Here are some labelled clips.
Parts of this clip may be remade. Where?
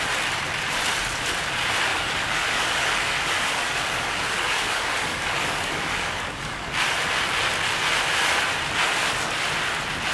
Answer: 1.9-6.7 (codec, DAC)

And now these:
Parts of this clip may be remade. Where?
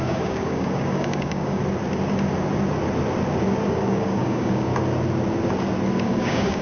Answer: 0.0-1.6 (codec, DAC); 3.7-4.7; 6.0-6.6